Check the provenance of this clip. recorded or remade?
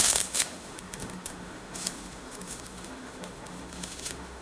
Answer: remade